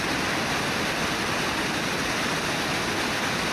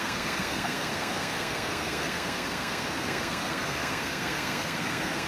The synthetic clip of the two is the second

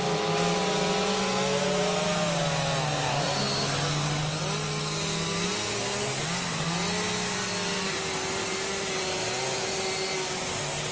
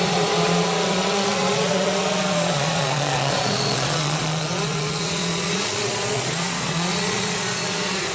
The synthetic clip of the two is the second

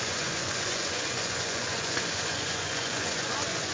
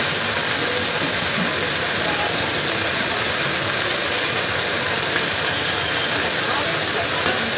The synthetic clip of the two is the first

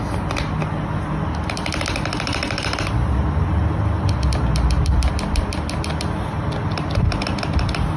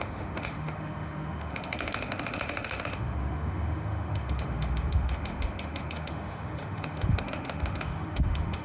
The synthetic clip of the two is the second